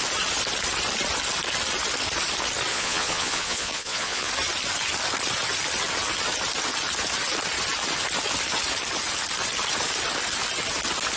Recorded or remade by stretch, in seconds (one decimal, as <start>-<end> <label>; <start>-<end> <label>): 0.0-2.7 recorded; 2.7-4.3 remade; 4.3-11.2 recorded